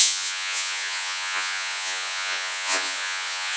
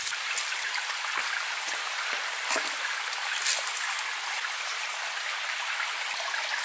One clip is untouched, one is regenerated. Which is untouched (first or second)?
second